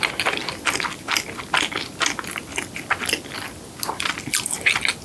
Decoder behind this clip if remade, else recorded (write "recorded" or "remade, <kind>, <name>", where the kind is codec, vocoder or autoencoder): recorded